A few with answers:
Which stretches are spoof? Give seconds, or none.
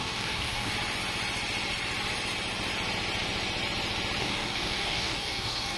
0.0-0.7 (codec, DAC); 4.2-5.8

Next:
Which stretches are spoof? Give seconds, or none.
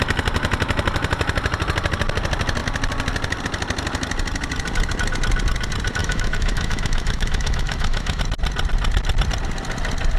6.0-8.2 (autoencoder, DAC-VAE)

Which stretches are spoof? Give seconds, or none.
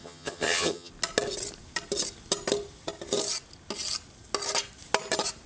0.0-0.9 (vocoder, HiFi-GAN)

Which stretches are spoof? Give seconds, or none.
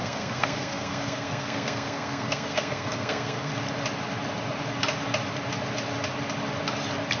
0.0-3.5 (codec, SNAC)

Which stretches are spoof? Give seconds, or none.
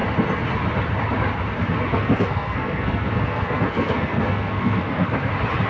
1.9-5.3 (codec, SNAC)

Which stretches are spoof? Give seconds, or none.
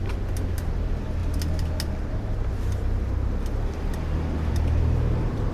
none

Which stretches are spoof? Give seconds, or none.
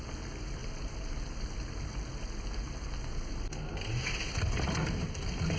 none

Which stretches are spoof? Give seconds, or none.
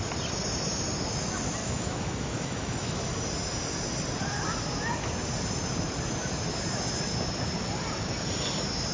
1.6-3.1 (autoencoder, DAC-VAE)